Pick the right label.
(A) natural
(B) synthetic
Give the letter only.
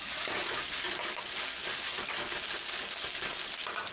A